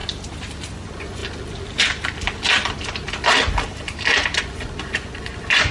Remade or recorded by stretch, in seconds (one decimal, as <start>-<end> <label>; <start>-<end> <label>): 0.0-0.7 recorded; 0.7-1.2 remade; 1.2-4.4 recorded; 4.4-5.7 remade